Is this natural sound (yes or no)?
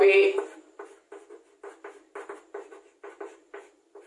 yes